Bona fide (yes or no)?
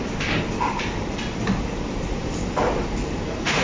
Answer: yes